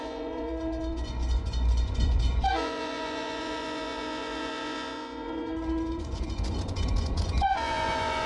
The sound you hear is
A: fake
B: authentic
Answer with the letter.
A